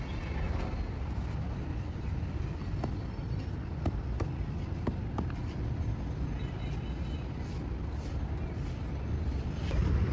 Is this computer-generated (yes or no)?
no